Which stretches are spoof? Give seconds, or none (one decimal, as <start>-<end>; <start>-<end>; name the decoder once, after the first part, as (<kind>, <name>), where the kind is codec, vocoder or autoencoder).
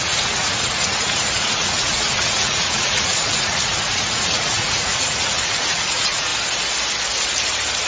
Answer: 0.0-6.3 (vocoder, Vocos)